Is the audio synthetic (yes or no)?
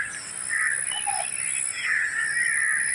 no